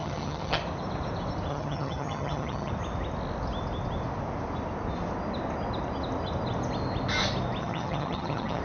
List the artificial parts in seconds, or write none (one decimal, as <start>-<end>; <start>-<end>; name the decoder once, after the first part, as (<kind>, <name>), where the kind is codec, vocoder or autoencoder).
0.0-0.6 (vocoder, HiFi-GAN); 1.5-2.7; 7.6-8.6